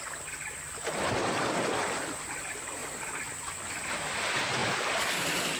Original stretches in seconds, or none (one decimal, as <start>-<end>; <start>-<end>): 0.0-1.0; 2.0-4.6